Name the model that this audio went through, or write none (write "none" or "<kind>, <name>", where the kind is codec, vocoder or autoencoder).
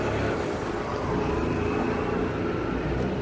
none